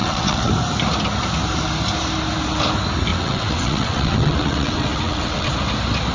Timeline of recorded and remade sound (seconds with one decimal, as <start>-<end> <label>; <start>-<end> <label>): 0.0-0.5 remade; 0.5-3.1 recorded; 3.1-5.5 remade; 5.5-6.1 recorded